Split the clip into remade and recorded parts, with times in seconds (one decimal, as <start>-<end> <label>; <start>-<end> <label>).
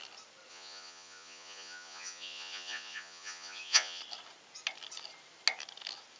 0.0-0.5 recorded; 0.5-4.0 remade; 4.0-6.2 recorded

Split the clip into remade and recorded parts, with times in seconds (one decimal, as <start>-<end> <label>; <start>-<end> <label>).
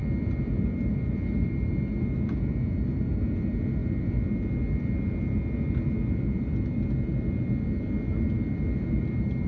0.0-9.5 recorded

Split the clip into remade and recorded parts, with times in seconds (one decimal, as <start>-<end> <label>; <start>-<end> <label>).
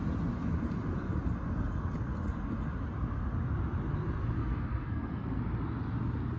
0.0-4.4 recorded; 4.4-5.4 remade; 5.4-6.4 recorded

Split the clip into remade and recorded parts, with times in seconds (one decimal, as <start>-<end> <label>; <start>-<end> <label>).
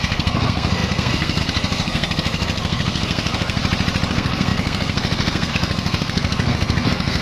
0.0-3.6 remade; 3.6-4.1 recorded; 4.1-7.2 remade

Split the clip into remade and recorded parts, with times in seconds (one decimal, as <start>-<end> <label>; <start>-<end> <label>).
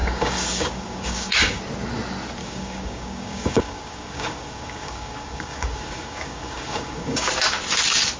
0.0-1.6 remade; 1.6-2.4 recorded; 2.4-7.3 remade; 7.3-8.2 recorded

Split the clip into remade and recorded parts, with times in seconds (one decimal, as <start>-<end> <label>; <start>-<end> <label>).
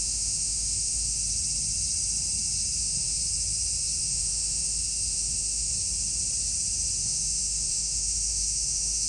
0.0-1.2 remade; 1.2-2.8 recorded; 2.8-3.2 remade; 3.2-4.0 recorded; 4.0-5.7 remade; 5.7-7.0 recorded; 7.0-9.1 remade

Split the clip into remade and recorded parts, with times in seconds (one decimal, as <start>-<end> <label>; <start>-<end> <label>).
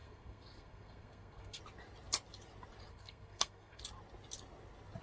0.0-1.6 remade; 1.6-2.9 recorded; 2.9-3.8 remade; 3.8-5.0 recorded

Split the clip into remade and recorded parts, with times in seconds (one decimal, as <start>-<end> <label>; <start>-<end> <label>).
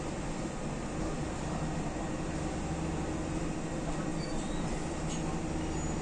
0.0-6.0 recorded